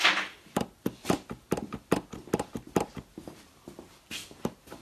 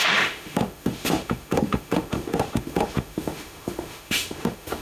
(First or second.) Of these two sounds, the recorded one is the first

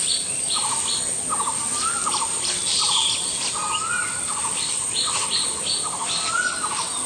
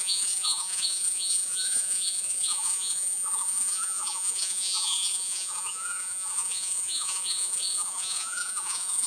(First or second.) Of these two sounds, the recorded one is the first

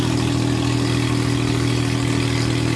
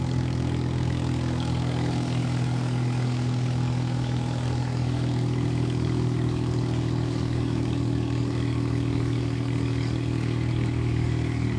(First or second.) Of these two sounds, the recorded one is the first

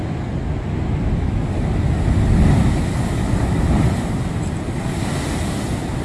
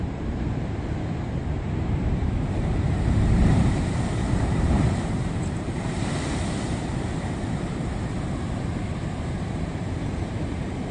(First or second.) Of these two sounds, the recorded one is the first